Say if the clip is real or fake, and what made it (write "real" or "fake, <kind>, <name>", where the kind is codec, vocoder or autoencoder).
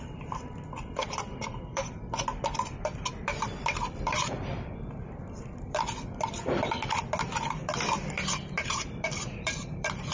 fake, vocoder, BigVGAN v2